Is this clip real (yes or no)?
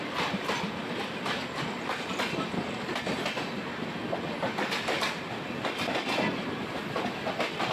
yes